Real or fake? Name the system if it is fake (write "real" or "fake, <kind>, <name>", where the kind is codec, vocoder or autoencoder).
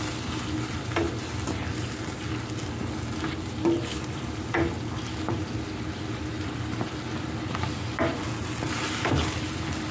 real